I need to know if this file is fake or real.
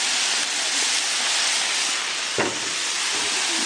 real